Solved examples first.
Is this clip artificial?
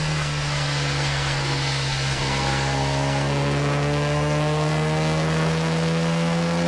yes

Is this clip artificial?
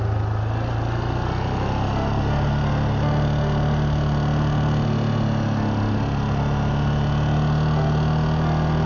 no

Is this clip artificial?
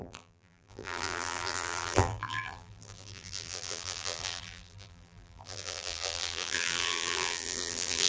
yes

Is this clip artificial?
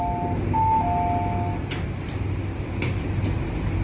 no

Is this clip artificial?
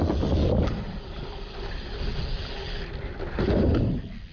no